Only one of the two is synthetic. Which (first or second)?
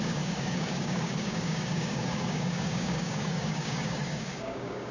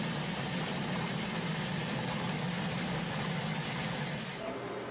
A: first